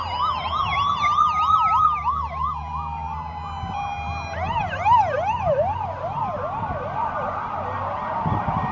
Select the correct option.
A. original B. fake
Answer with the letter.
A